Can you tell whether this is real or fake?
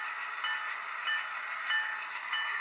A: real